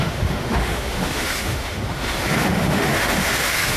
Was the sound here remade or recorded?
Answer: remade